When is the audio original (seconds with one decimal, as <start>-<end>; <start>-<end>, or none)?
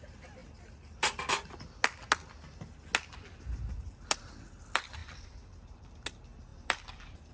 0.0-5.0; 5.9-6.5